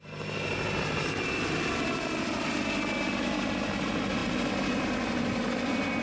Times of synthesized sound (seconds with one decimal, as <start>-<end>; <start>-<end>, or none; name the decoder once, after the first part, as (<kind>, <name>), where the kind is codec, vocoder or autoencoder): none